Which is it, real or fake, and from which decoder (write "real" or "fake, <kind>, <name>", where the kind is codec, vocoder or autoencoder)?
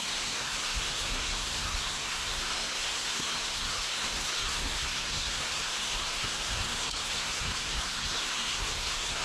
fake, codec, SNAC